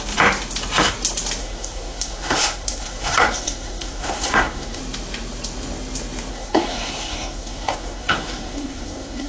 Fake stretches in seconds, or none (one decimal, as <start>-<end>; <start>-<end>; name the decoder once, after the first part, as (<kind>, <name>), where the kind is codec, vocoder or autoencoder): 1.4-4.8 (codec, SNAC); 6.3-9.3